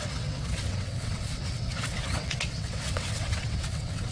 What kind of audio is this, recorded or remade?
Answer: remade